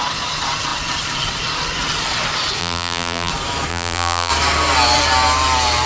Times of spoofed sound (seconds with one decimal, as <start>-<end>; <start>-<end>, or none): 2.6-3.3; 3.7-4.3